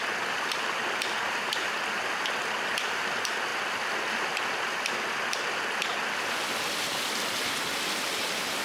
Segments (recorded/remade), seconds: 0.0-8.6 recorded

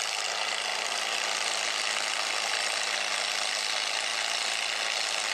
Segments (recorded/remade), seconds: 0.0-5.3 recorded